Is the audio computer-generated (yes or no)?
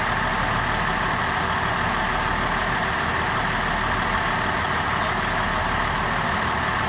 no